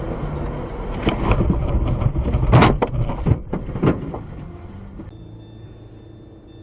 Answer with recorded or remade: recorded